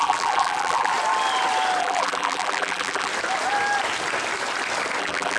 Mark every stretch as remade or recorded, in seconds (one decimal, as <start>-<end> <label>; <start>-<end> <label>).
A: 0.0-0.9 remade; 0.9-1.8 recorded; 1.8-3.1 remade; 3.1-5.0 recorded; 5.0-5.4 remade